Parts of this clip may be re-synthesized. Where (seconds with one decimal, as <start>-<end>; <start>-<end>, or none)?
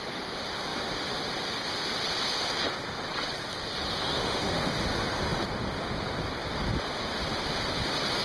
4.0-4.7